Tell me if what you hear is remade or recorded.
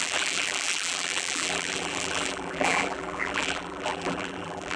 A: remade